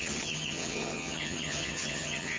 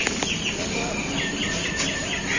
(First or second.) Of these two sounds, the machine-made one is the first